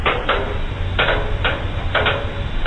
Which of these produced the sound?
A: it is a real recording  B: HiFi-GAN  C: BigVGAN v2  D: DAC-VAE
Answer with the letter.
A